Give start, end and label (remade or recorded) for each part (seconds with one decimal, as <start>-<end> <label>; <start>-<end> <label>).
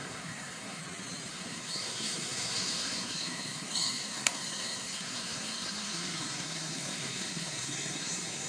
0.0-0.8 remade; 0.8-1.3 recorded; 1.3-8.5 remade